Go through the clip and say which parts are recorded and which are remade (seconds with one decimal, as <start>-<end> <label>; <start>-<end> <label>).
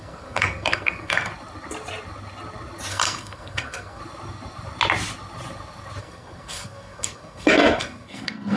0.0-1.3 remade; 1.3-2.9 recorded; 2.9-4.0 remade; 4.0-6.0 recorded; 6.0-8.6 remade